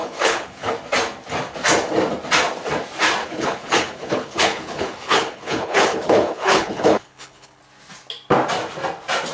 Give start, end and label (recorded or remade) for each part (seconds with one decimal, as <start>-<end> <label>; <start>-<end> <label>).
0.0-0.7 remade; 0.7-3.2 recorded; 3.2-7.6 remade; 7.6-9.3 recorded